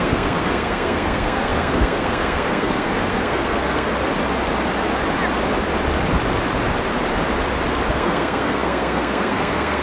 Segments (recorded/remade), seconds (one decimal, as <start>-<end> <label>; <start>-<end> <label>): 0.0-3.9 remade; 3.9-7.9 recorded; 7.9-9.8 remade